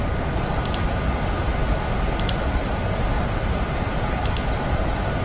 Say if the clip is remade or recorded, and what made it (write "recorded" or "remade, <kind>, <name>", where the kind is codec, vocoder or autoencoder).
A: recorded